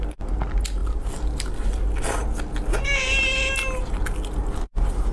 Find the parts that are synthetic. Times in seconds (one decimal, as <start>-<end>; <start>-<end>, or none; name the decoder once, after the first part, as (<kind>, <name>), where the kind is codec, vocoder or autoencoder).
none